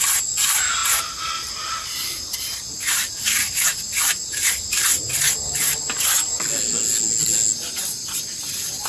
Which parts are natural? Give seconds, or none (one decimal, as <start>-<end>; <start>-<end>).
0.0-8.9